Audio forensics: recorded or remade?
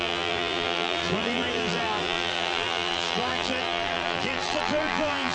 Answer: remade